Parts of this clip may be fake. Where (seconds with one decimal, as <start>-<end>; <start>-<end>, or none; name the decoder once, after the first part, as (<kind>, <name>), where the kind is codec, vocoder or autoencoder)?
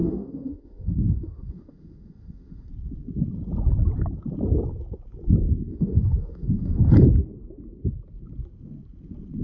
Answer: 0.0-2.7 (autoencoder, DAC-VAE); 5.7-6.9